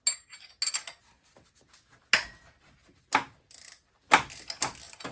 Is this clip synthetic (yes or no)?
no